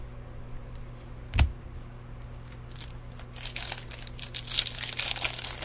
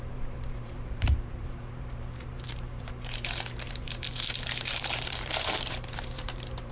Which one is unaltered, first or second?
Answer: first